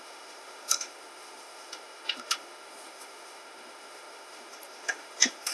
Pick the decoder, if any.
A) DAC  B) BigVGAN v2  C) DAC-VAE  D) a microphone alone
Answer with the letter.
C